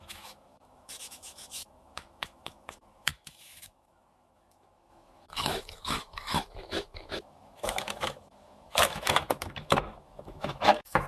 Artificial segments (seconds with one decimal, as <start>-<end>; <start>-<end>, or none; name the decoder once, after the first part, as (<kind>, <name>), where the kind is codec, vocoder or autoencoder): 0.0-11.1 (autoencoder, DAC-VAE)